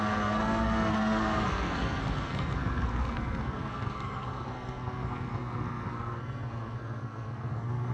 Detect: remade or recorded remade